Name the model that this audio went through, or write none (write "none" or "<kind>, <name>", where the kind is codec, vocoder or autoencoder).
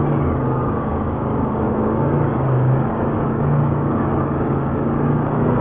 codec, DAC